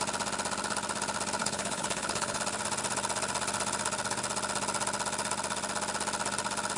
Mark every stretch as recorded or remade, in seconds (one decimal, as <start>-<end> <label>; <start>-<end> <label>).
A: 0.0-1.4 recorded; 1.4-2.4 remade; 2.4-6.8 recorded